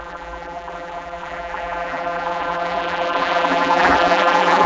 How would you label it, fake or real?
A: fake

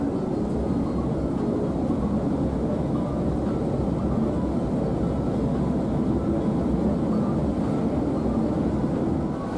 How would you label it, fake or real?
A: real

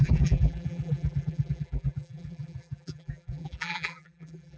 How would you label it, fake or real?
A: fake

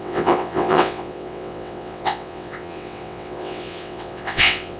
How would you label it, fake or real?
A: fake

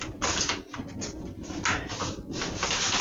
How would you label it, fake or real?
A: real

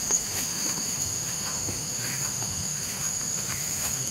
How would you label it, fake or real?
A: fake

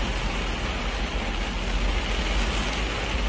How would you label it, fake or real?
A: real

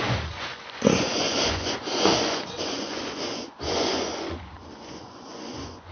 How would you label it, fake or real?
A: fake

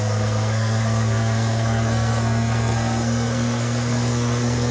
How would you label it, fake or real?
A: fake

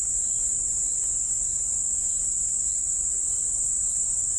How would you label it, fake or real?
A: fake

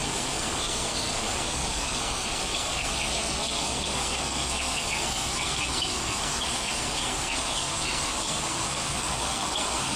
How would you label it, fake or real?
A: fake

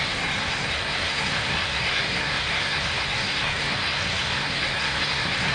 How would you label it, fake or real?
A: fake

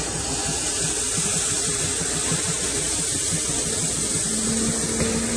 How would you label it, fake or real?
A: real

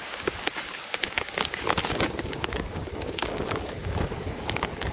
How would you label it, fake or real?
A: fake